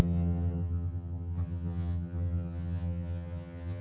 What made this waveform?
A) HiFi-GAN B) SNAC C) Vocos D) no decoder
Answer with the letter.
A